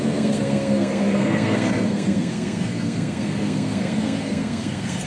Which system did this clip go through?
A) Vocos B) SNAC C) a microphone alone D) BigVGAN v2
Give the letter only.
B